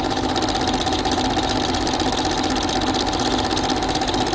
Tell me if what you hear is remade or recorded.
recorded